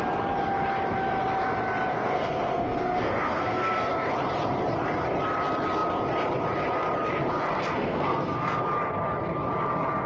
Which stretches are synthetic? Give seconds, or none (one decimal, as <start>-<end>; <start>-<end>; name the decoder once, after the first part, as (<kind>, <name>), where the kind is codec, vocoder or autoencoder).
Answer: 1.9-3.9 (codec, SNAC); 7.8-8.6